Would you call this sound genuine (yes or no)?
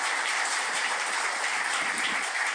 no